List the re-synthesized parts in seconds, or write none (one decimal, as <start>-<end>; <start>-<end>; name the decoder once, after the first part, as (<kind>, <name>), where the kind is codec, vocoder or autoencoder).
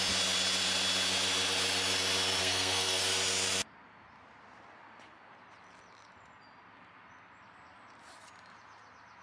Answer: 2.4-3.0 (codec, SNAC)